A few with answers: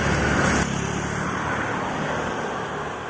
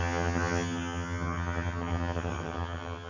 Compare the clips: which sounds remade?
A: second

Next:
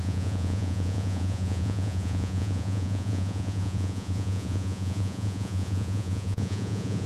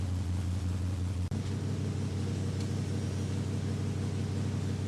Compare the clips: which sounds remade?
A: first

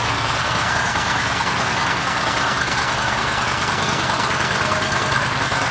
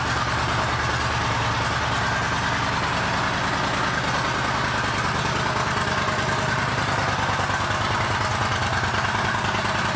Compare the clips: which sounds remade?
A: first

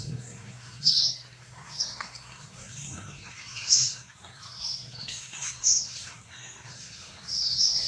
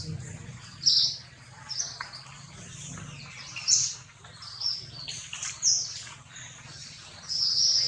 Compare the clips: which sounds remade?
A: first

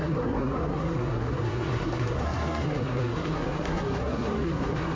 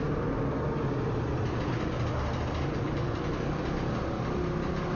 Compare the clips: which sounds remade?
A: first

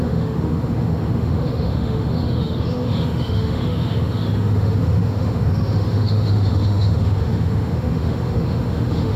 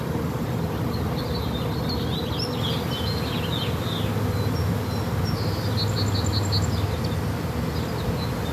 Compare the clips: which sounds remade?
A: first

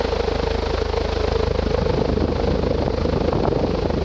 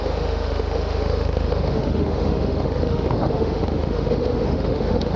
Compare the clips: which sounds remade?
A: second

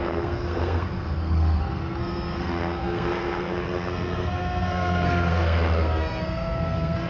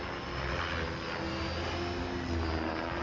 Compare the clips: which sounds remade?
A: first